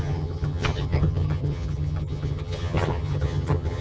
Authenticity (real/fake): fake